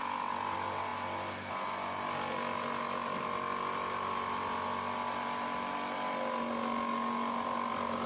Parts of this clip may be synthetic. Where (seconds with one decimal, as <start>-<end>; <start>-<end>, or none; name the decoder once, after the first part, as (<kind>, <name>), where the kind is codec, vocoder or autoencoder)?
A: none